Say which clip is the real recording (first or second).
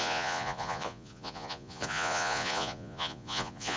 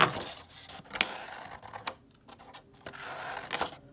second